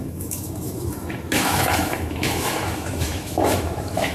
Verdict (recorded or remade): remade